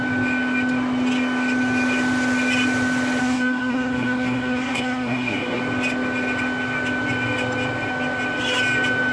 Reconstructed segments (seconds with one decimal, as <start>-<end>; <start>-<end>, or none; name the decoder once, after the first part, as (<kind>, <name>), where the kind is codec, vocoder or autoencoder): 3.2-5.6 (codec, SNAC)